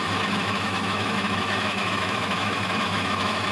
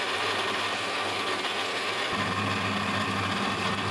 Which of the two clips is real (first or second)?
second